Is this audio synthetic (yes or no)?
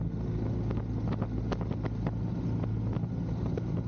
no